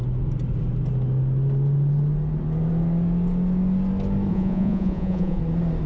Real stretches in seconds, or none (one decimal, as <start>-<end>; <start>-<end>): 0.0-4.3; 5.4-5.9